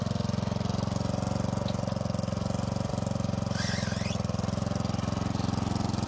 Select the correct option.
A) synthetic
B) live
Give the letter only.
B